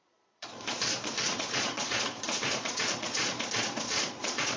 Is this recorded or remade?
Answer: remade